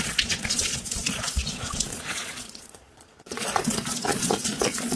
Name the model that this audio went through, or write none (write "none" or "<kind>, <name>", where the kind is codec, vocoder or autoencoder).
vocoder, Vocos